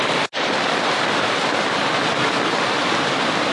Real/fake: real